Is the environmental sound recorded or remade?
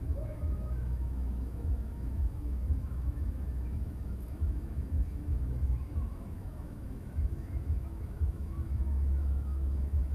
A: remade